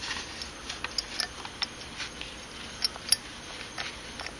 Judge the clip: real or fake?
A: real